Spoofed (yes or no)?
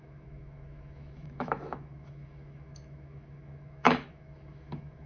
yes